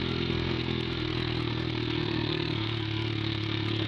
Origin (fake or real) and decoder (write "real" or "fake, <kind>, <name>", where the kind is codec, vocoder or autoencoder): fake, codec, SNAC